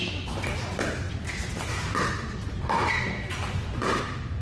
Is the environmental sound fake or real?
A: real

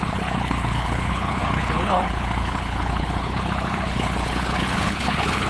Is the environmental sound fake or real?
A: fake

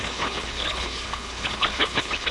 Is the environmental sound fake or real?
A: fake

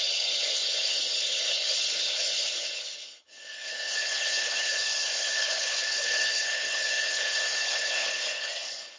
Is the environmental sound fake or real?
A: fake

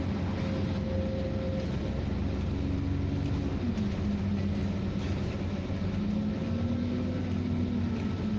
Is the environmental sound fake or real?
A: real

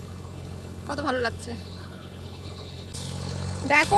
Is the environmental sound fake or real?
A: fake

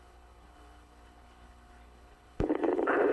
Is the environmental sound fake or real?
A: fake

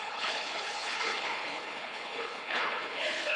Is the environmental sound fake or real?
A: fake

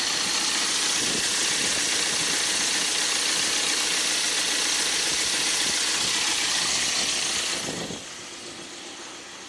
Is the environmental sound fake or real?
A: real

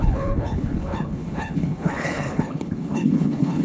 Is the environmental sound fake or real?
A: fake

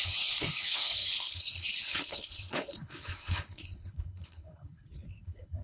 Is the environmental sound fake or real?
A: fake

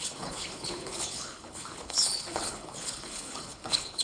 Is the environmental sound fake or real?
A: fake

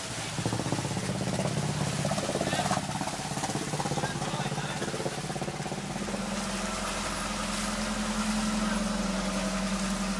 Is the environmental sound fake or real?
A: real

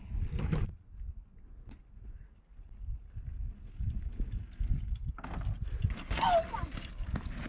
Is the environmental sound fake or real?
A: real